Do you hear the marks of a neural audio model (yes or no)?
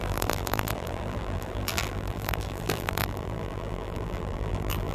yes